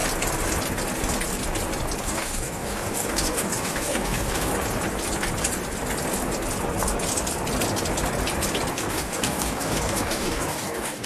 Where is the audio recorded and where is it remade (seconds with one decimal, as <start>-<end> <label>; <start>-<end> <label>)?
0.0-2.0 recorded; 2.0-4.5 remade; 4.5-8.7 recorded; 8.7-11.1 remade